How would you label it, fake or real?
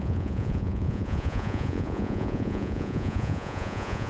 fake